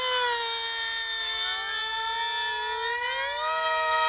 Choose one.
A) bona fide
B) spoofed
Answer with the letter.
A